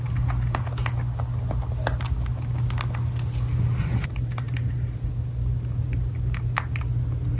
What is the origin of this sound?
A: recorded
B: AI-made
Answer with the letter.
A